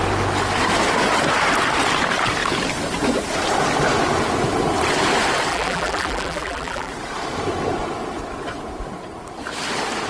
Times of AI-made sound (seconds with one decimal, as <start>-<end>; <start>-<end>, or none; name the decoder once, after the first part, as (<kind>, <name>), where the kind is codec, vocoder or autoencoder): 5.5-6.9 (vocoder, BigVGAN v2)